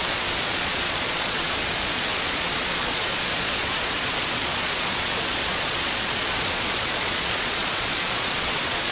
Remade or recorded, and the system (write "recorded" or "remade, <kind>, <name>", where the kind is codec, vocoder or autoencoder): remade, vocoder, Vocos